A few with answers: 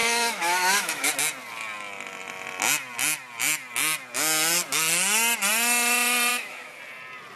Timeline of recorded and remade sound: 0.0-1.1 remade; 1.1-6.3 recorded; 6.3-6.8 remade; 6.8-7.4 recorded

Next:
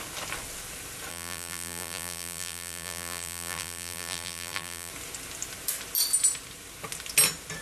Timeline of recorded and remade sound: 0.0-1.1 recorded; 1.1-4.9 remade; 4.9-7.6 recorded